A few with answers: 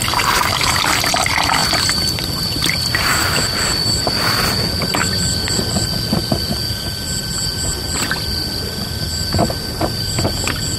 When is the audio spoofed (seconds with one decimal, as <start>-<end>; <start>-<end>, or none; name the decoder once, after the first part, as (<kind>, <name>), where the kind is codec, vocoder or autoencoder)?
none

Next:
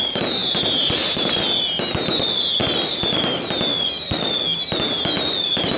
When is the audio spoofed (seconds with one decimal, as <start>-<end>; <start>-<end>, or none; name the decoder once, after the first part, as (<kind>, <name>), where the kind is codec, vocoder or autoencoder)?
0.4-1.4 (vocoder, BigVGAN v2)

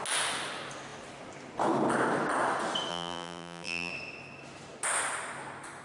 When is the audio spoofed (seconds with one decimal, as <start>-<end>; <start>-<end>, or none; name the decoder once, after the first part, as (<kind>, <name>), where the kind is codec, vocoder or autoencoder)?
2.9-3.9 (vocoder, BigVGAN v2)

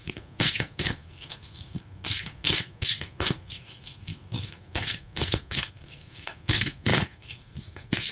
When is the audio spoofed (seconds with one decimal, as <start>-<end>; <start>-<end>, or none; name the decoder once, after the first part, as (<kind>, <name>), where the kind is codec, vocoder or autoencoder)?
0.0-8.1 (codec, SNAC)